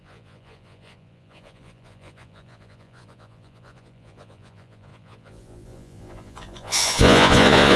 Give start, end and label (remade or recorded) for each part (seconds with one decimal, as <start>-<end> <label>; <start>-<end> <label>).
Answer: 0.0-7.8 remade